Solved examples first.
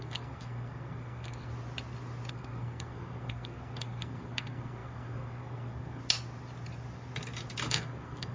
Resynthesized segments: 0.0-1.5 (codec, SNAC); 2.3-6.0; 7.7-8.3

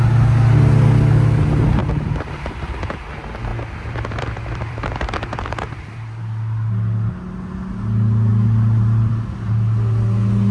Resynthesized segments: 1.8-3.1 (vocoder, BigVGAN v2); 3.5-6.2; 8.3-9.1